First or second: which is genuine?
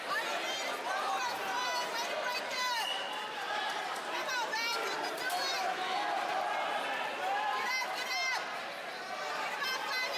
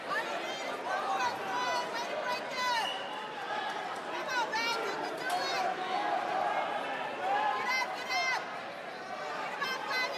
second